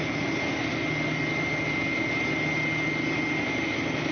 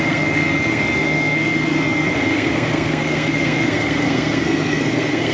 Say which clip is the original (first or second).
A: first